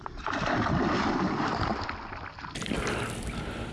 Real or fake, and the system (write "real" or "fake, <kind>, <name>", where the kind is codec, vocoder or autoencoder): real